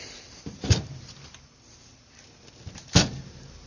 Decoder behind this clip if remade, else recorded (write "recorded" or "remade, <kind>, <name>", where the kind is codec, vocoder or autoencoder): recorded